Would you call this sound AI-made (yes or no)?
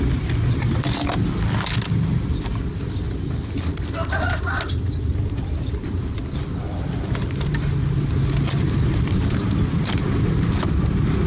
no